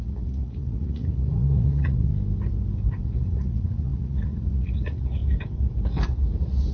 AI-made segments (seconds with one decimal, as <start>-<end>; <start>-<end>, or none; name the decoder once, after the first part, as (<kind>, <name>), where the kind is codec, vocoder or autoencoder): 0.0-2.1 (vocoder, Vocos); 3.0-5.2